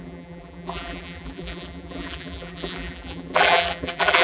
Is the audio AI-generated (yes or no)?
yes